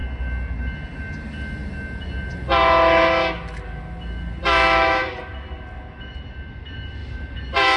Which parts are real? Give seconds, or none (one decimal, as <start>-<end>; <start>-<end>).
0.0-7.8